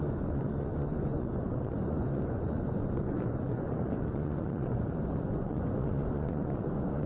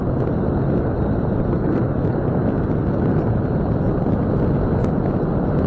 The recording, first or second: second